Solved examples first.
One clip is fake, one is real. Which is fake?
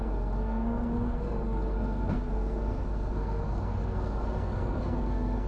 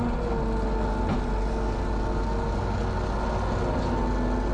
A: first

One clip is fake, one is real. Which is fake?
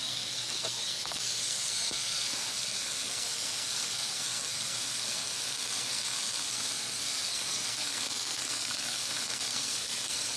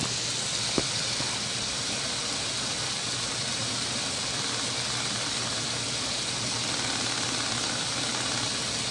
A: first